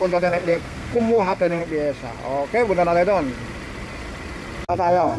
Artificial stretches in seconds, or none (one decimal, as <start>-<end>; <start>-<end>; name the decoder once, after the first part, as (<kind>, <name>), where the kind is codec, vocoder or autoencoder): 0.0-1.6 (codec, SNAC); 4.7-5.2